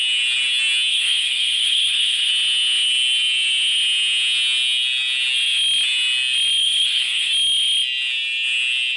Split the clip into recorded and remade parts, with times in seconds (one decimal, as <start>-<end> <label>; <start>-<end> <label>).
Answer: 0.0-0.9 recorded; 0.9-2.3 remade; 2.3-6.6 recorded; 6.6-7.3 remade; 7.3-9.0 recorded